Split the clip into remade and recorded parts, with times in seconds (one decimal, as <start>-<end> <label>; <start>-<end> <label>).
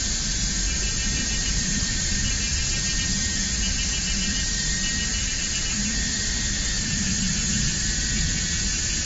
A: 0.0-1.4 recorded; 1.4-2.1 remade; 2.1-9.0 recorded